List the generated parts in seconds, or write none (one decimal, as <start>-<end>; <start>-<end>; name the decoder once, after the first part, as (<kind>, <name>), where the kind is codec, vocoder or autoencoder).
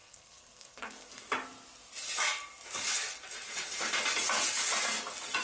0.0-1.1 (codec, SNAC)